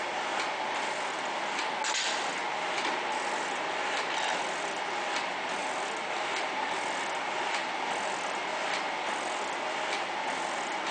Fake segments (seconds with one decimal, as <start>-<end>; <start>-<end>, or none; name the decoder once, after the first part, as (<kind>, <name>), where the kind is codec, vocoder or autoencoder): none